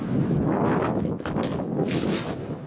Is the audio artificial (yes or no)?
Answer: no